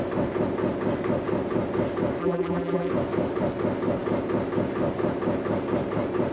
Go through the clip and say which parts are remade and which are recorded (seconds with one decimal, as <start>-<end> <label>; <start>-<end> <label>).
0.0-2.2 recorded; 2.2-2.9 remade; 2.9-6.3 recorded